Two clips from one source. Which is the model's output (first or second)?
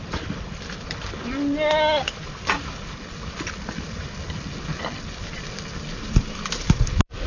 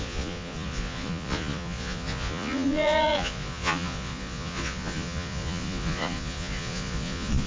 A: second